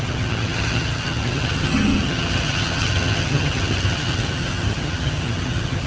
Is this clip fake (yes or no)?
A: yes